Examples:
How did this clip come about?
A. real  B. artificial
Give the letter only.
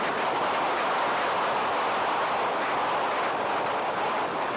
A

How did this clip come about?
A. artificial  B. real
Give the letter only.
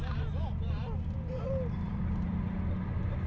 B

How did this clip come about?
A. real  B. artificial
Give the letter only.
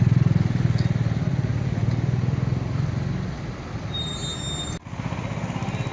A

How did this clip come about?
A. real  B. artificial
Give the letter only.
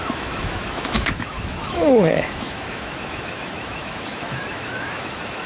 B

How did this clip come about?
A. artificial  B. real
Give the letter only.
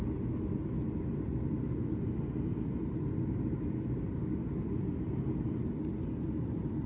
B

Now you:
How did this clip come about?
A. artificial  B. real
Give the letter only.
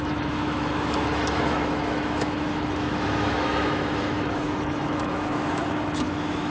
A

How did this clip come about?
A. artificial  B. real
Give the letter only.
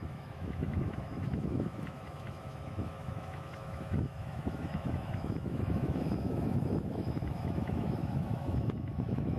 A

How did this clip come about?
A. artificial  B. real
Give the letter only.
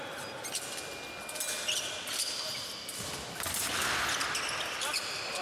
B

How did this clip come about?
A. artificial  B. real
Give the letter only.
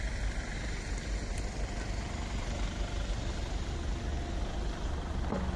B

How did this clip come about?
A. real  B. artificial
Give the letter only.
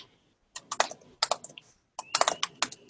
A